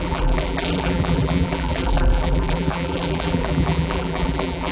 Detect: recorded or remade remade